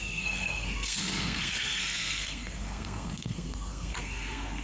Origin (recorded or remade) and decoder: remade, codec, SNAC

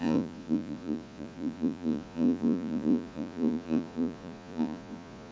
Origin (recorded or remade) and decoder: remade, vocoder, Vocos